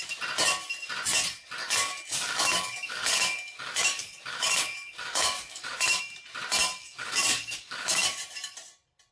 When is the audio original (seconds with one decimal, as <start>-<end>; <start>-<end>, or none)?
0.0-1.6; 6.0-6.8; 8.1-9.1